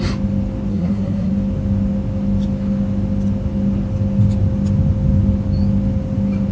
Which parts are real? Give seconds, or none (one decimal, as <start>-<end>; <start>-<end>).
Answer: 0.0-0.7; 1.3-6.5